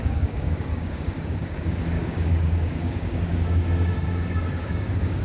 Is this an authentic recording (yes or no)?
no